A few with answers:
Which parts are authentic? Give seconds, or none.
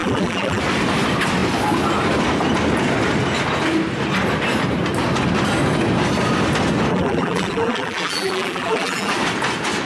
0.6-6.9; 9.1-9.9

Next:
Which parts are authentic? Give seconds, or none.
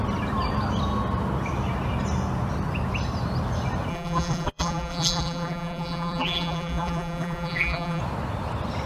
0.0-3.9; 8.0-8.9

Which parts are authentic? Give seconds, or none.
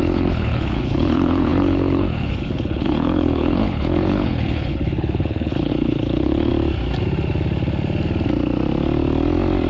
6.5-9.7